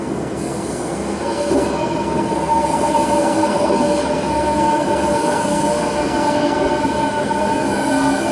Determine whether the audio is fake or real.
fake